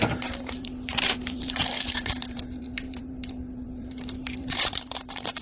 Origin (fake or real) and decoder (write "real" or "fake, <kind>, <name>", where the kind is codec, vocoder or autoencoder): fake, vocoder, BigVGAN v2